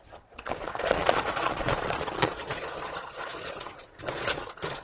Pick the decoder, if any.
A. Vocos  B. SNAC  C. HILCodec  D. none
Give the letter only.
A